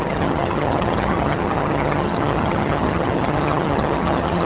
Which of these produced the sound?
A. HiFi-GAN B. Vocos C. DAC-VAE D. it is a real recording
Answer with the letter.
A